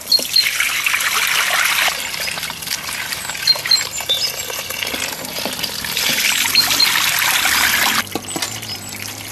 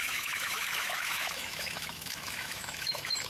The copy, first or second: second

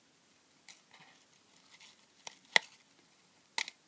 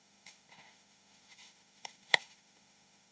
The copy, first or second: second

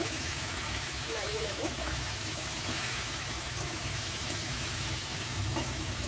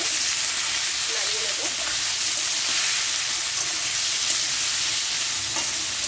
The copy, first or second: first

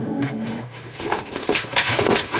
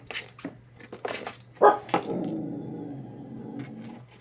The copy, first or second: first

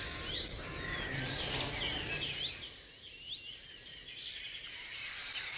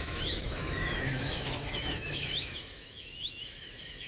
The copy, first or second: second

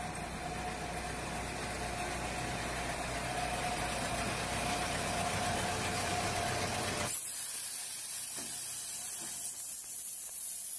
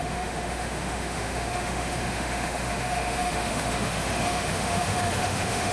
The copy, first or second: second